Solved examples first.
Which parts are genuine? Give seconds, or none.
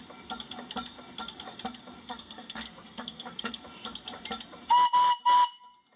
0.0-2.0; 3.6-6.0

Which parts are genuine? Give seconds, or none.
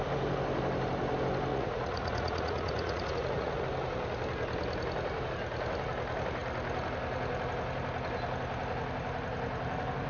0.0-1.5; 3.6-10.1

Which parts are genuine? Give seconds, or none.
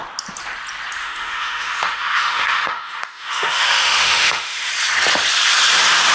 0.0-1.0; 4.7-6.1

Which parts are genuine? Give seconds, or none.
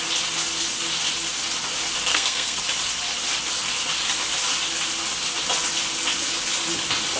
0.0-2.1; 2.6-7.2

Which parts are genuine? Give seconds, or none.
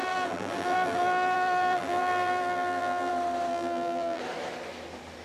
3.1-3.5; 4.2-5.2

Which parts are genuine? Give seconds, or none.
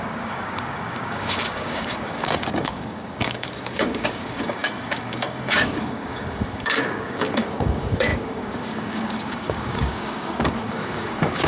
none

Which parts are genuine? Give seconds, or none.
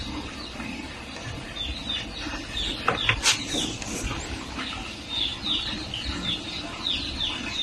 0.0-4.1; 4.6-7.6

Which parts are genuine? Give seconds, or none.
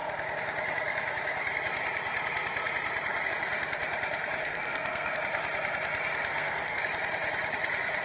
0.0-4.4; 5.2-6.3; 6.8-8.0